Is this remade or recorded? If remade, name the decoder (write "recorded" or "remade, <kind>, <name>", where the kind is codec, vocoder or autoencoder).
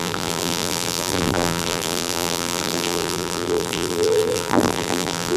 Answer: remade, vocoder, BigVGAN v2